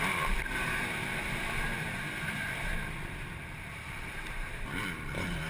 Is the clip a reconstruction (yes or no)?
yes